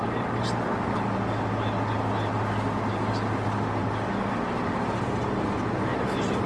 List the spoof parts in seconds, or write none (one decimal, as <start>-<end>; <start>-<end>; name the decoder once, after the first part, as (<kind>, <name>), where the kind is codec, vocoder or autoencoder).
none